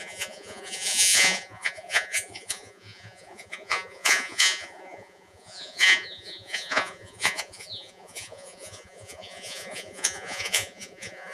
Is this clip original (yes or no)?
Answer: no